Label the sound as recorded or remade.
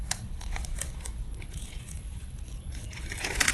remade